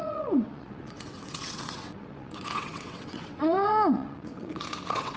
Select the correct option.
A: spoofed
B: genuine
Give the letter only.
A